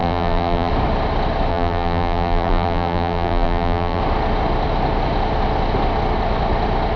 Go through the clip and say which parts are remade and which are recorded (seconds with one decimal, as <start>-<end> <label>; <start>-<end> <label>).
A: 0.0-0.7 remade; 0.7-1.5 recorded; 1.5-4.0 remade; 4.0-7.0 recorded